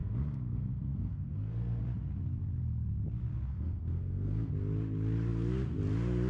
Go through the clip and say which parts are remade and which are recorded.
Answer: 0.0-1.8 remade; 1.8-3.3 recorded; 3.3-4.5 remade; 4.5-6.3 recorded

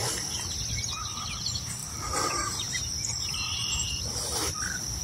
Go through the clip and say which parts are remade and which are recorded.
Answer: 0.0-1.8 recorded; 1.8-3.9 remade; 3.9-5.0 recorded